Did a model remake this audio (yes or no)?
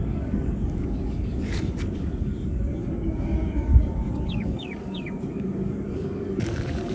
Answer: yes